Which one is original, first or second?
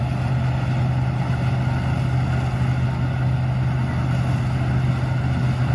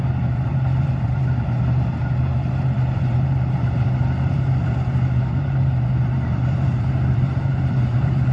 first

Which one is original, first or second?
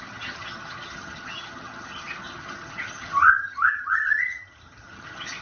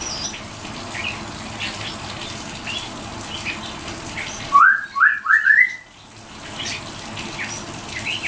second